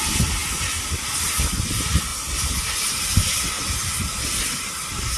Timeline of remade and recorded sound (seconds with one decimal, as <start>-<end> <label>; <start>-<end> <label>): 0.0-5.2 recorded